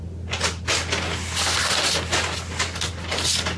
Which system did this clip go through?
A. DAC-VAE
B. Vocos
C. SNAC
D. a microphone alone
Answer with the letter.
D